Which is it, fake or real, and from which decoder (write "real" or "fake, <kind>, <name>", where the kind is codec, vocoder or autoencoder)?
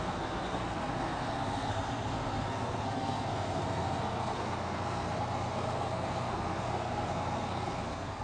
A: fake, codec, SNAC